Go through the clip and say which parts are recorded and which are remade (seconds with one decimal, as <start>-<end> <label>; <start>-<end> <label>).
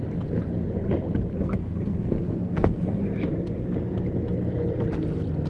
0.0-1.3 recorded; 1.3-3.0 remade; 3.0-5.5 recorded